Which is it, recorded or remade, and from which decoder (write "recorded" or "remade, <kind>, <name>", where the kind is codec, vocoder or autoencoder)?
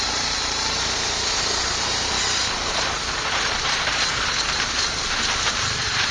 remade, vocoder, BigVGAN v2